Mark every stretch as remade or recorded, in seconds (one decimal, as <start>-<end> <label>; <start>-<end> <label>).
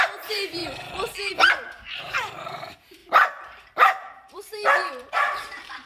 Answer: 0.0-0.6 remade; 0.6-1.3 recorded; 1.3-5.9 remade